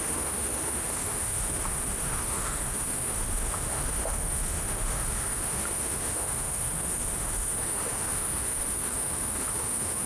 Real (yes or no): no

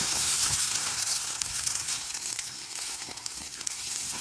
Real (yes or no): no